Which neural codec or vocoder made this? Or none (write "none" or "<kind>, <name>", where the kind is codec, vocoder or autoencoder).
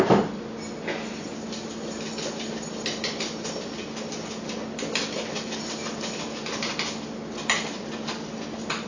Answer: none